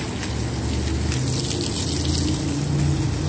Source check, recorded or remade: recorded